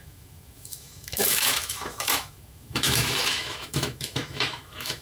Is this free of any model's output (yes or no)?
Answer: no